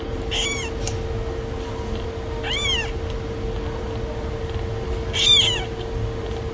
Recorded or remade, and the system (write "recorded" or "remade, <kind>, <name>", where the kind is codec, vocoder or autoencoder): recorded